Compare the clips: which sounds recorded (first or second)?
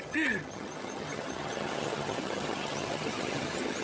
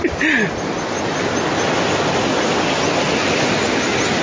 second